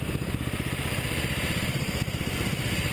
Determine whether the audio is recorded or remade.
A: recorded